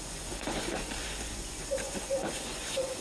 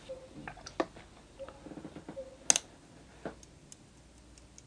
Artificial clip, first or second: first